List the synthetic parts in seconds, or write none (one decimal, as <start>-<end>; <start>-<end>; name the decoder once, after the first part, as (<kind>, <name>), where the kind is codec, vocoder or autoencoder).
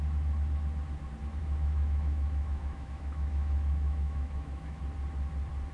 1.4-4.8 (autoencoder, DAC-VAE)